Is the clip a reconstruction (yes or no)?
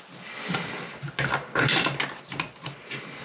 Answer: no